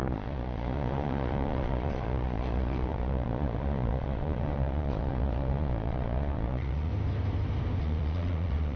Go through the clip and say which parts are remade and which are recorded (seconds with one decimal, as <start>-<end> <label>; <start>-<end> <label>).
0.0-6.9 remade; 6.9-7.8 recorded; 7.8-8.8 remade